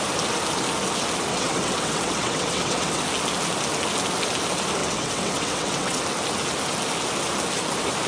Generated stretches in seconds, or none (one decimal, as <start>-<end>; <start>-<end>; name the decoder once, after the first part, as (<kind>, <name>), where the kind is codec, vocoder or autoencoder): 1.3-3.0 (vocoder, WaveNeXt); 4.8-6.0